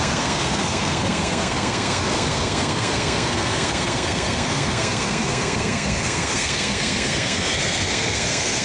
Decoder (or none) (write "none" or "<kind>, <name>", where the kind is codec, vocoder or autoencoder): codec, SNAC